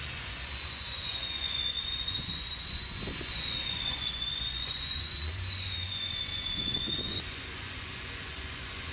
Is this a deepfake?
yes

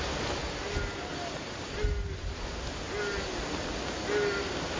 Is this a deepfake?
no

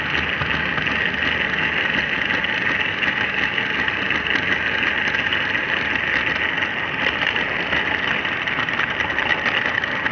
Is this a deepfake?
no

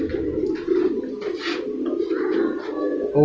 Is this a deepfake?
no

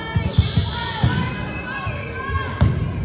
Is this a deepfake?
no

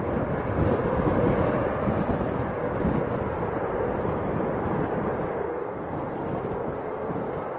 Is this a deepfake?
no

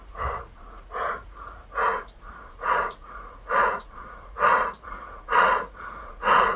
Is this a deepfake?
yes